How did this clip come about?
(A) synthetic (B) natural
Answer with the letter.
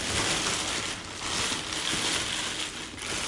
B